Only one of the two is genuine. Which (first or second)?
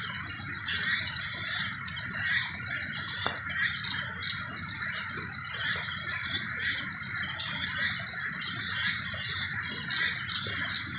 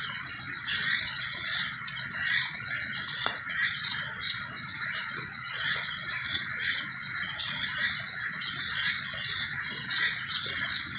first